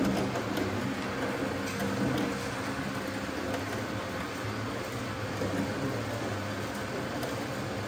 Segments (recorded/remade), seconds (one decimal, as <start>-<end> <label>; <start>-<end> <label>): 0.0-7.9 recorded